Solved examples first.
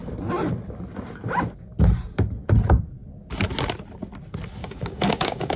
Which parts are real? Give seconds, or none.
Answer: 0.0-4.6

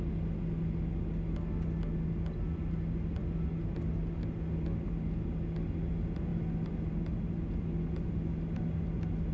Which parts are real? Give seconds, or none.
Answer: 0.0-9.3

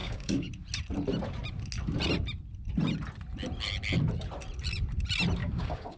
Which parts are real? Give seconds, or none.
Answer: 0.5-5.4

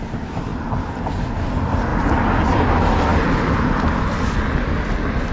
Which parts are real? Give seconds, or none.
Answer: 0.0-5.3

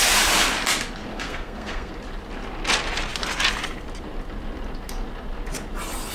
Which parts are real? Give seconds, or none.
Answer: 0.0-1.1; 1.9-6.1